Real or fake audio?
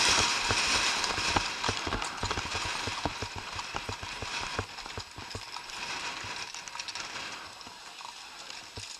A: real